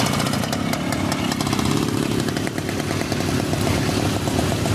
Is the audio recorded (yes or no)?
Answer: yes